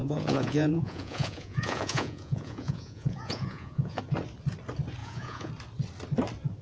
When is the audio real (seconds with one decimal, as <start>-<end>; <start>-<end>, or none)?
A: 4.0-5.0; 5.5-6.6